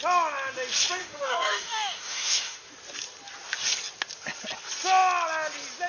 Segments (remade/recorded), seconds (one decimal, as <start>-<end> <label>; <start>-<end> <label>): 0.0-1.0 recorded; 1.0-2.7 remade; 2.7-5.9 recorded